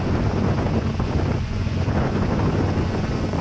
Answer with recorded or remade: remade